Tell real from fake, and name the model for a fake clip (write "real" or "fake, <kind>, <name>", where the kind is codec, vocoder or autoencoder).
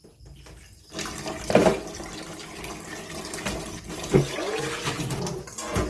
real